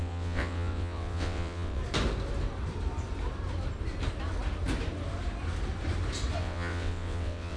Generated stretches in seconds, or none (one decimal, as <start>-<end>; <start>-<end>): 0.0-1.8; 6.4-7.6